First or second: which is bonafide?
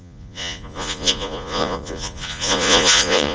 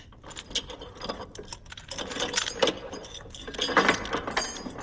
second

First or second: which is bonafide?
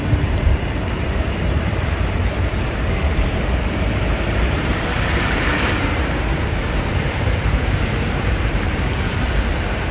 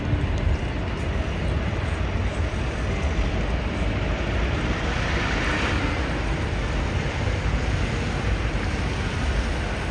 second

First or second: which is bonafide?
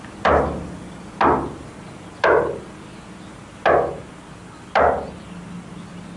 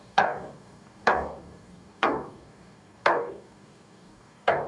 first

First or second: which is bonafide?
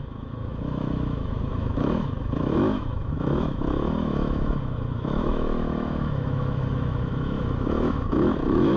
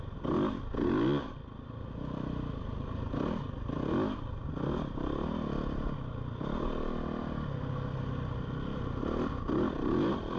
second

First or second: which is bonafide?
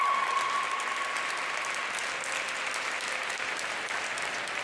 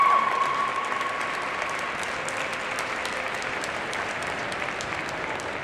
first